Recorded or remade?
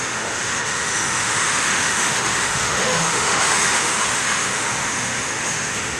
remade